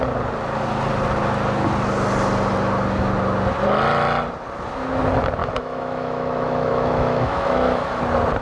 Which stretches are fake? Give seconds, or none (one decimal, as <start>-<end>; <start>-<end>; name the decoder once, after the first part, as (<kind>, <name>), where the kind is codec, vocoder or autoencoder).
5.4-8.0 (autoencoder, DAC-VAE)